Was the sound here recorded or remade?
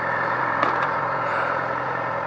remade